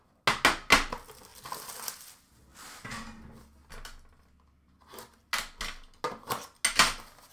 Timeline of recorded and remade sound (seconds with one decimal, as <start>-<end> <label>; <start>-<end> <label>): 0.0-7.3 recorded